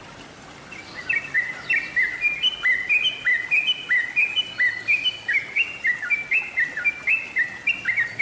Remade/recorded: recorded